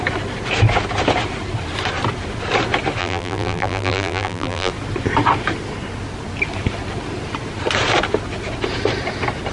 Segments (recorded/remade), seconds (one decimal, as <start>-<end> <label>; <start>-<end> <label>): 0.0-3.0 recorded; 3.0-4.7 remade; 4.7-9.5 recorded